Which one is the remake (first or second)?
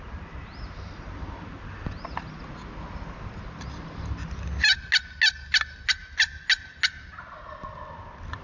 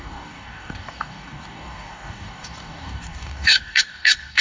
second